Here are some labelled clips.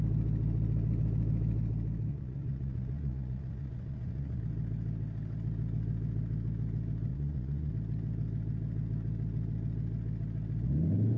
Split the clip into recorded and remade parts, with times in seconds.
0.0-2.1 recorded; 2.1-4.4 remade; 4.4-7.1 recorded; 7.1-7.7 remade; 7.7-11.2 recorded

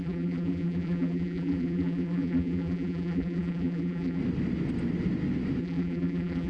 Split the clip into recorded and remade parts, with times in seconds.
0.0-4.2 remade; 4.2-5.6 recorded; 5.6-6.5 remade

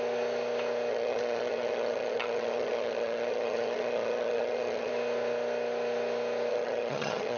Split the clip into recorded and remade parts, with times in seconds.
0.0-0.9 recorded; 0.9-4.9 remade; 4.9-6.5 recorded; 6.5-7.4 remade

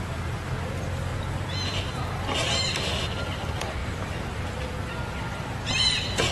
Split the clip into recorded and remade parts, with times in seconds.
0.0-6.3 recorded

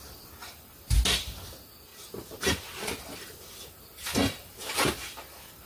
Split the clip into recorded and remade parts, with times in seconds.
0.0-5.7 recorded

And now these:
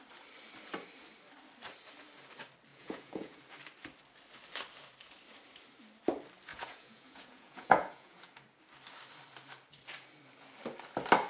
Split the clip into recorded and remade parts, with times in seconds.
0.0-2.7 recorded; 2.7-3.4 remade; 3.4-6.5 recorded; 6.5-8.3 remade; 8.3-11.3 recorded

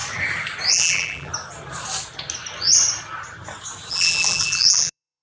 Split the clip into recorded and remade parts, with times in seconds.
0.0-0.7 recorded; 0.7-1.3 remade; 1.3-3.9 recorded; 3.9-5.2 remade

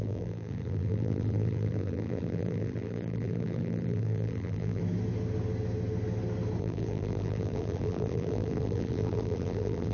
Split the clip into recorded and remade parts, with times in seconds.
0.0-4.8 remade; 4.8-6.6 recorded; 6.6-9.9 remade